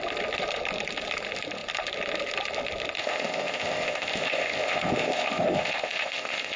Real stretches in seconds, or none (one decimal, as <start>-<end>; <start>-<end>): 0.0-3.0